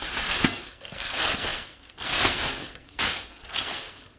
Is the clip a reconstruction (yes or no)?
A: yes